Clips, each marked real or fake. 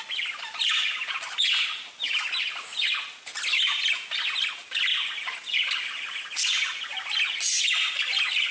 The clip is real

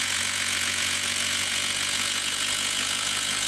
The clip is fake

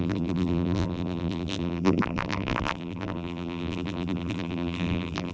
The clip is fake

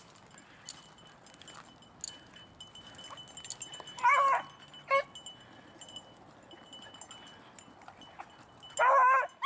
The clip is real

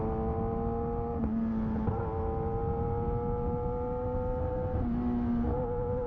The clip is real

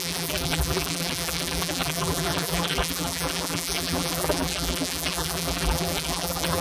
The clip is fake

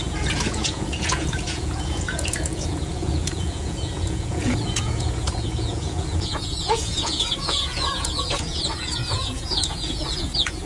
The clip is fake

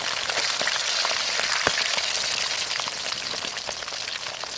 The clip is real